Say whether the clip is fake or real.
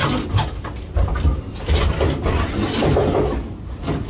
real